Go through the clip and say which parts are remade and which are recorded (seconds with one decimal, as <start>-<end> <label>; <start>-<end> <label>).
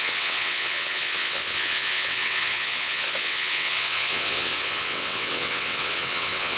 0.0-6.6 remade